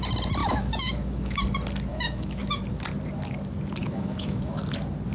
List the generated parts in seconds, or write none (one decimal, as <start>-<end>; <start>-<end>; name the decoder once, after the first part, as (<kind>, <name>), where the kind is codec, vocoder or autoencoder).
0.4-1.4 (autoencoder, DAC-VAE); 1.9-2.6; 3.8-4.6